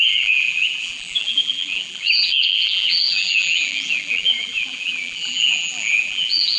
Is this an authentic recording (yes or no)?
no